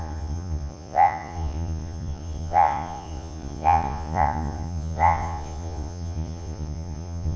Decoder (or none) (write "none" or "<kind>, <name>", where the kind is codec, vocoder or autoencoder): vocoder, Vocos